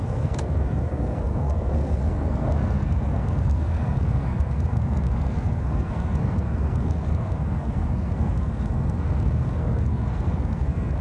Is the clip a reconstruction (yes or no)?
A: yes